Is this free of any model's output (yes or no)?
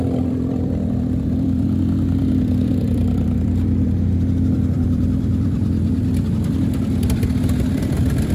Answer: no